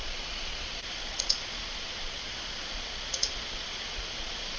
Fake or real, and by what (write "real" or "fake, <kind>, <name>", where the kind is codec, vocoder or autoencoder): fake, vocoder, Vocos